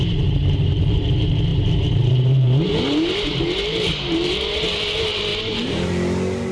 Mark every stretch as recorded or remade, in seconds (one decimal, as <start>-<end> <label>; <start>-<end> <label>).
0.0-5.3 remade; 5.3-6.5 recorded

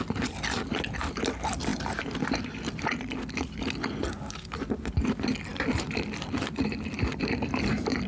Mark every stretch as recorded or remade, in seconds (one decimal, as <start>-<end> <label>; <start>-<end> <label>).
0.0-1.7 recorded; 1.7-3.9 remade; 3.9-5.5 recorded; 5.5-6.4 remade; 6.4-7.1 recorded; 7.1-8.1 remade